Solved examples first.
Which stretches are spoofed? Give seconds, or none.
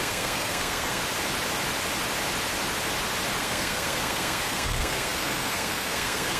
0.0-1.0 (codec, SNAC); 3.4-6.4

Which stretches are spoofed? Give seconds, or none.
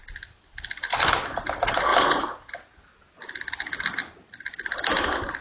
none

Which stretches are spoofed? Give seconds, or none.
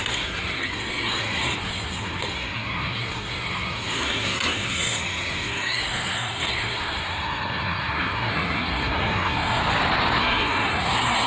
0.0-9.6 (codec, SNAC); 10.2-11.3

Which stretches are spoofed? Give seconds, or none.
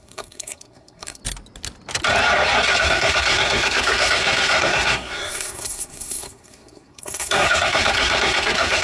0.0-1.2 (codec, SNAC); 2.8-8.8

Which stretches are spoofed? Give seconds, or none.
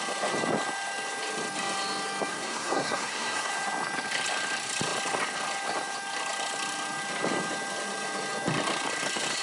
2.3-3.5 (codec, SNAC)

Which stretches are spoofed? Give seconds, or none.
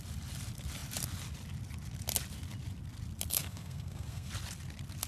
3.3-4.3 (codec, SNAC)